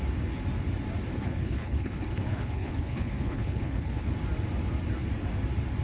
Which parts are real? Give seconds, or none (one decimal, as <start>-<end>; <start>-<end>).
0.0-1.1; 4.1-5.8